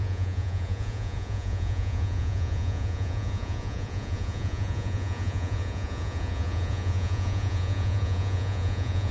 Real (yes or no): no